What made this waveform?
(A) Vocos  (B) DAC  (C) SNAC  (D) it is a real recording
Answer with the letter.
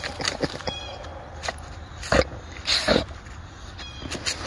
D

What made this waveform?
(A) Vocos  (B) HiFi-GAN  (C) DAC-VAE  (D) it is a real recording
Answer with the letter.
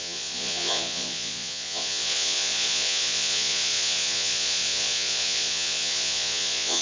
A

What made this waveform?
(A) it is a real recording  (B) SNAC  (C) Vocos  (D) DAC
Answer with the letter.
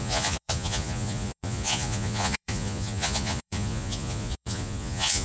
C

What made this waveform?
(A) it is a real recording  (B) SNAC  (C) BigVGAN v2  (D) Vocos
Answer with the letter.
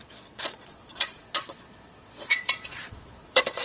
D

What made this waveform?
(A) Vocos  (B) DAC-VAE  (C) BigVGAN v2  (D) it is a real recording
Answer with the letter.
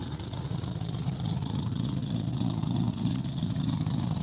A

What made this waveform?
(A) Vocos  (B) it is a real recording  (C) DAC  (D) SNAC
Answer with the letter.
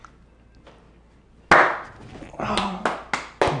B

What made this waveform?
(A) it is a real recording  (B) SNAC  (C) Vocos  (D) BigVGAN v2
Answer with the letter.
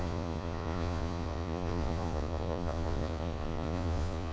C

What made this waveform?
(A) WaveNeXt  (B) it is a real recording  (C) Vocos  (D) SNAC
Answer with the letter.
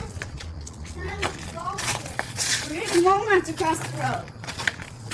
C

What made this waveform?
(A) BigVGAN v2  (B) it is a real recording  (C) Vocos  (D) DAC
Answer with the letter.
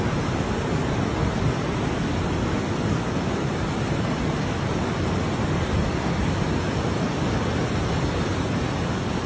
B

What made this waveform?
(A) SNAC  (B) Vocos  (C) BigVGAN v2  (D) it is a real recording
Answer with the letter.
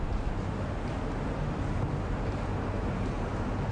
D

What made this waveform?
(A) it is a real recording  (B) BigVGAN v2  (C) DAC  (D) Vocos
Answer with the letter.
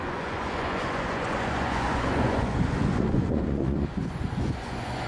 D